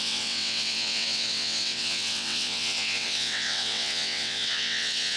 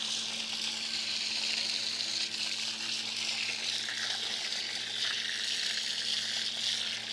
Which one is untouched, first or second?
second